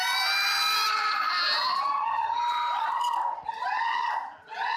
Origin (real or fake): real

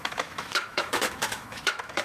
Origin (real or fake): fake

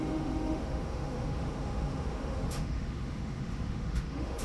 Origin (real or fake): fake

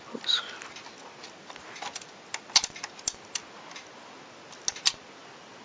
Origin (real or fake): real